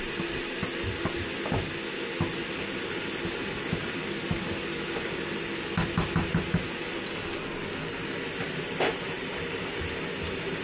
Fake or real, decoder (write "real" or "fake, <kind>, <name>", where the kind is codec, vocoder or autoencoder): real